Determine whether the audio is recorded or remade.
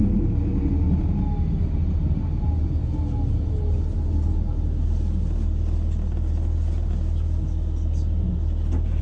recorded